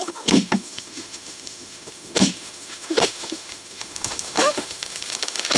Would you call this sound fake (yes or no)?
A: yes